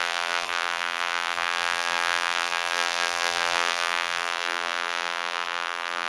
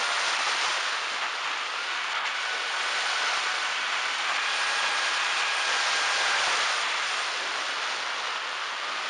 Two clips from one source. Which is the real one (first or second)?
second